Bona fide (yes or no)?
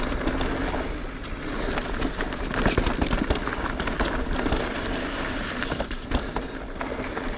yes